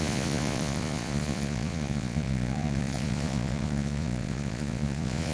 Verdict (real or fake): fake